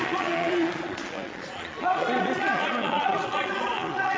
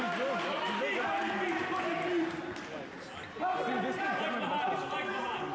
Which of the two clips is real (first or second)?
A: second